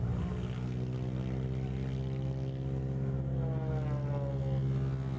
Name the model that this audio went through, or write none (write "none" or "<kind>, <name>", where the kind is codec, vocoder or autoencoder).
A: none